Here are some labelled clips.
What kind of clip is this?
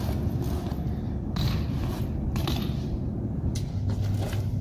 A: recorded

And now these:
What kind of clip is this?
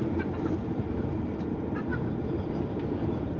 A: recorded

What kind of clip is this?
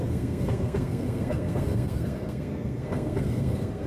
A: remade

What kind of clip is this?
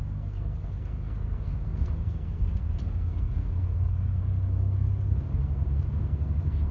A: remade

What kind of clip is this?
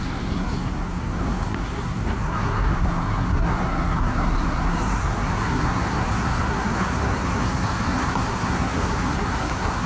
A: remade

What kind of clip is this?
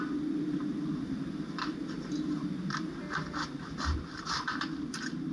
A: recorded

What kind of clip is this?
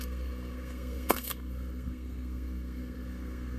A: remade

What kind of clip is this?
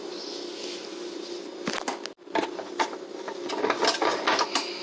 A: recorded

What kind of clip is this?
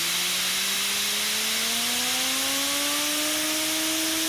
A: recorded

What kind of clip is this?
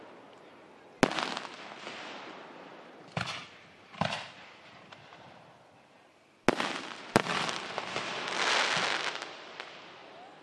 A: recorded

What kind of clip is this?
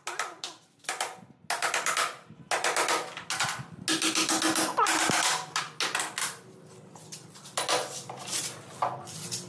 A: recorded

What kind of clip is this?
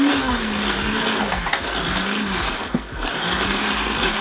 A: remade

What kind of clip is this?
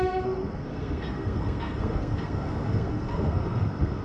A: remade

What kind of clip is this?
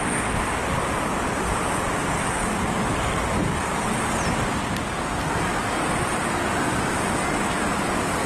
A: recorded